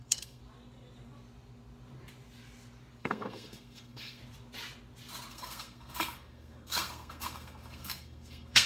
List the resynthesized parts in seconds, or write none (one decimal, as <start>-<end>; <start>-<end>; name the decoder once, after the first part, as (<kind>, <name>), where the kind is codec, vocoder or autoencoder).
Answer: 0.0-0.4 (codec, SNAC); 3.0-4.2; 5.3-8.7